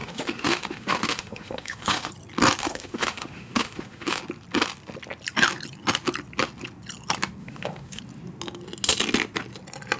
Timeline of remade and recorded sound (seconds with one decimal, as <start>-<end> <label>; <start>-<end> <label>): 0.0-2.1 remade; 2.1-2.6 recorded; 2.6-4.2 remade; 4.2-7.4 recorded; 7.4-8.0 remade; 8.0-10.0 recorded